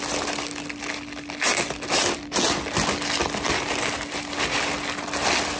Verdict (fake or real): real